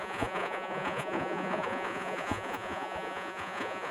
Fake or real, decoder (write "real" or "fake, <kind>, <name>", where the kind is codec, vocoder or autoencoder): fake, vocoder, Vocos